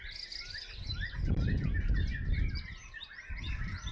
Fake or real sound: real